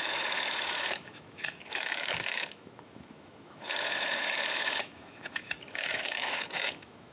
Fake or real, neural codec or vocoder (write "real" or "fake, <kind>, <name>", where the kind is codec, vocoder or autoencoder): fake, autoencoder, DAC-VAE